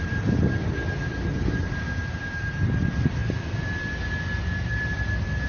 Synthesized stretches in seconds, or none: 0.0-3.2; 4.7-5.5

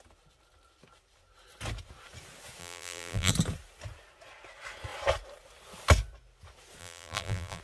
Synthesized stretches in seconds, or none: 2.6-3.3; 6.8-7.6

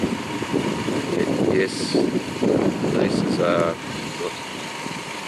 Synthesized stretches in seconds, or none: 0.5-3.2

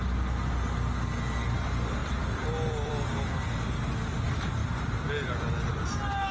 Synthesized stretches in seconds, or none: 2.0-2.9; 4.6-5.7

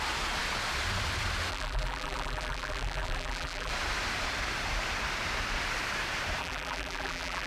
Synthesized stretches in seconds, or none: 1.5-3.7; 6.4-7.5

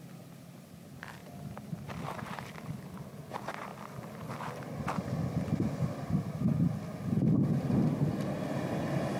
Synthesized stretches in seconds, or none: 0.0-1.2; 2.3-3.7